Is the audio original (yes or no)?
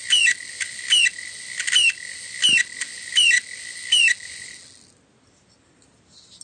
yes